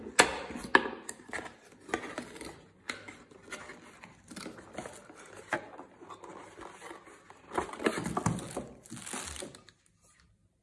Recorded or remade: recorded